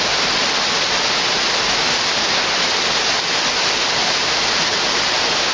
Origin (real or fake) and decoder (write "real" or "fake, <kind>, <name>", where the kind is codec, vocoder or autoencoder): real